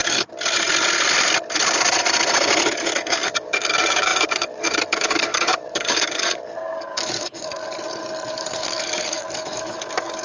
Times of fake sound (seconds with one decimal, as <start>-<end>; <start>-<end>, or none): 2.6-7.6; 8.3-10.2